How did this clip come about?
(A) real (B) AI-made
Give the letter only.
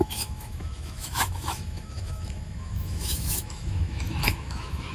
B